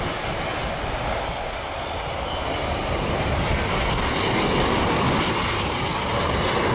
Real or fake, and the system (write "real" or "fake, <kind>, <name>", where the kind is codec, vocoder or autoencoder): real